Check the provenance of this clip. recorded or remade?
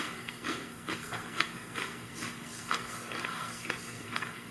remade